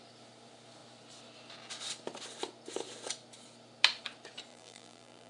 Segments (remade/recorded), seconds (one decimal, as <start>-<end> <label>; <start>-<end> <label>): 0.0-4.5 recorded; 4.5-5.3 remade